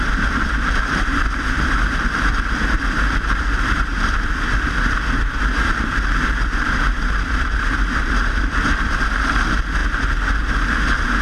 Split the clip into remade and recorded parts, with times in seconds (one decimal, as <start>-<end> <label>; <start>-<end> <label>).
0.0-9.8 remade; 9.8-11.2 recorded